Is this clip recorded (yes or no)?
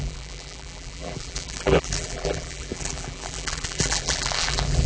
no